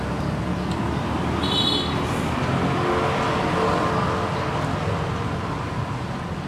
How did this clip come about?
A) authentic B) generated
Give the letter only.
A